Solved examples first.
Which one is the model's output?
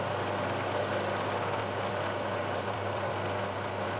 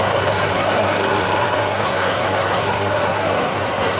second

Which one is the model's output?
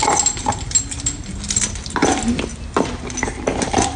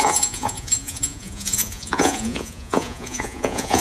second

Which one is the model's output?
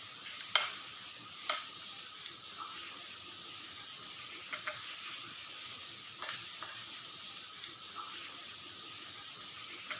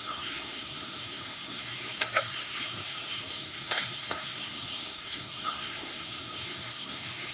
second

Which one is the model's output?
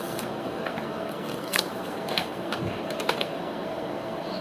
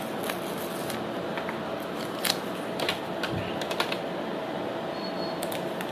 first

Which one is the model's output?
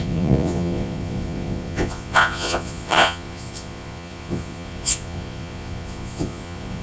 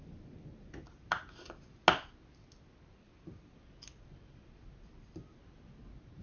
first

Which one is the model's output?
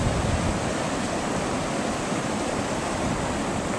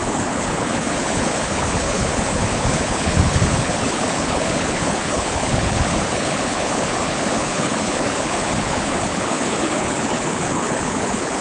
second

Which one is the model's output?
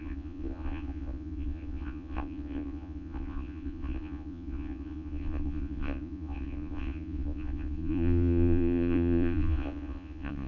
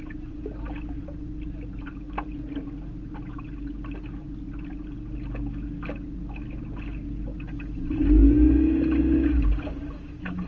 first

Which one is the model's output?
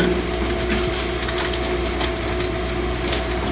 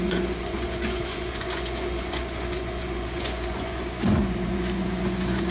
second